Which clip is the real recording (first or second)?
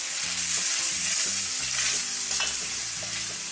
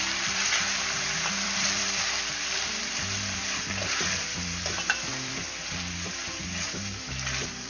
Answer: first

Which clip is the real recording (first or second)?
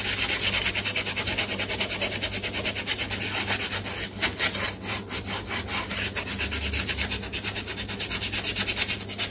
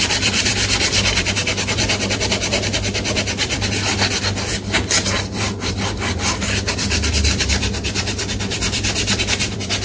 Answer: first